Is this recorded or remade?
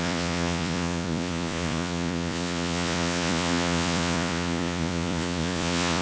remade